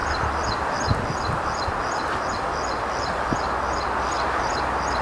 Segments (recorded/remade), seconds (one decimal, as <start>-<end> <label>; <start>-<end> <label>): 0.0-5.0 recorded